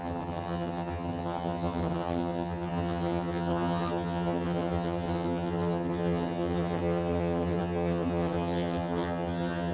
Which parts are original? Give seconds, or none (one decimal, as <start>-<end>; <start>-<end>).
none